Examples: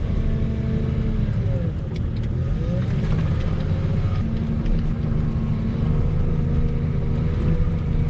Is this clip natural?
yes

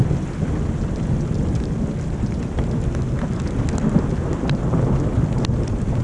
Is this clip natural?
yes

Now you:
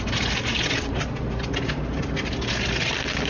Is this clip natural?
yes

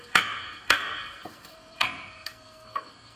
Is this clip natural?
no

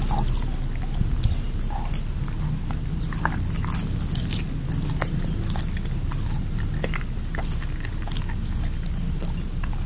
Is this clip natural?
yes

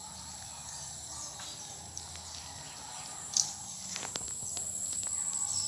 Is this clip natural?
yes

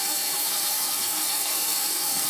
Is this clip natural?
no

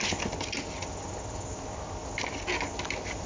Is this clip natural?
yes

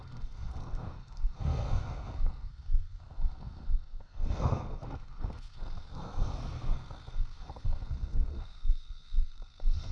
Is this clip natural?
no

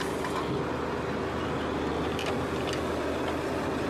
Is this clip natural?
yes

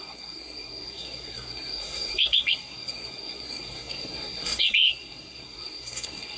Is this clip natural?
no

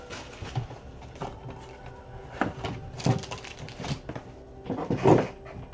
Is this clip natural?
yes